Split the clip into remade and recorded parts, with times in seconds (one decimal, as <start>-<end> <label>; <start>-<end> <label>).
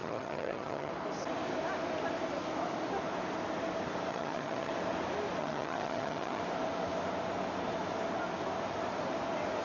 0.0-0.9 remade; 0.9-4.1 recorded; 4.1-4.7 remade; 4.7-5.4 recorded; 5.4-6.4 remade; 6.4-9.6 recorded